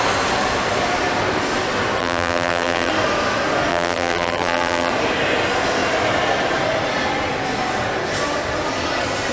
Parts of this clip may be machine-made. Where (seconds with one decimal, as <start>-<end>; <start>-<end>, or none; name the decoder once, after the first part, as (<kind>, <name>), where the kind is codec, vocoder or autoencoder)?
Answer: 2.0-2.9 (vocoder, BigVGAN v2); 3.7-4.9